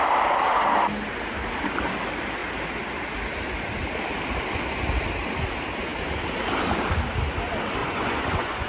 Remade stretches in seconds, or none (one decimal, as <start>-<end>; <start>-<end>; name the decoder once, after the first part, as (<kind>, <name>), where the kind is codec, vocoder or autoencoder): 7.8-8.7 (vocoder, Vocos)